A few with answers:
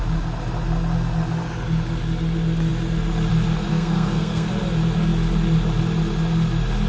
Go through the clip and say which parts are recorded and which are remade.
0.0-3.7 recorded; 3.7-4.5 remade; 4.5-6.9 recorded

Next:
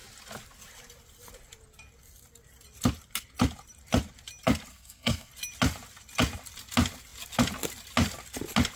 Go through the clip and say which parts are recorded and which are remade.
0.0-4.7 recorded; 4.7-5.3 remade; 5.3-8.8 recorded

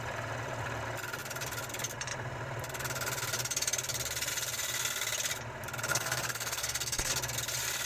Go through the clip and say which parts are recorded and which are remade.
0.0-5.9 recorded; 5.9-7.1 remade; 7.1-7.9 recorded